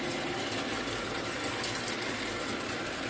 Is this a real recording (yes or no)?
yes